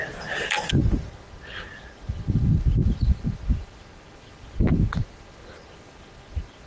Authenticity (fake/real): real